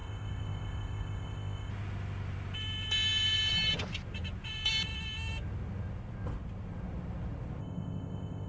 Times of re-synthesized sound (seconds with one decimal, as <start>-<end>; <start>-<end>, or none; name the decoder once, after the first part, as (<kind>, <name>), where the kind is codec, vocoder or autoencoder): 0.0-1.7 (codec, ZipCodec); 7.6-8.5